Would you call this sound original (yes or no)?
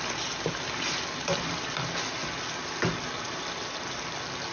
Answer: yes